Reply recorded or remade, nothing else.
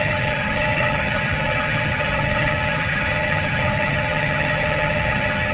remade